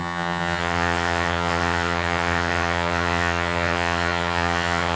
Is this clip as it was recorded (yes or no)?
no